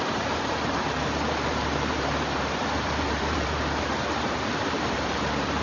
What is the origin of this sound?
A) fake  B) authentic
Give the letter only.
A